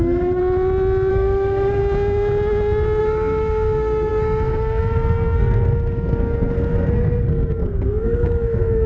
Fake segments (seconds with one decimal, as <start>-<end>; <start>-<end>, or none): 0.0-0.4; 1.1-1.8; 3.0-8.9